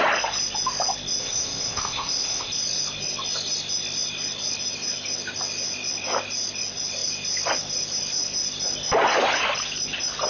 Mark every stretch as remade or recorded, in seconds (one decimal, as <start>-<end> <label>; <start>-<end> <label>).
0.0-1.2 recorded; 1.2-2.5 remade; 2.5-10.3 recorded